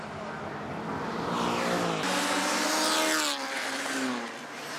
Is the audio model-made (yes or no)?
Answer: no